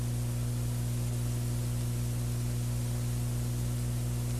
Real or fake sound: real